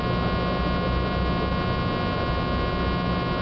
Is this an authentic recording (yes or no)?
yes